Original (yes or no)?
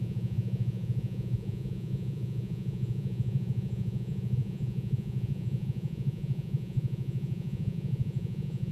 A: no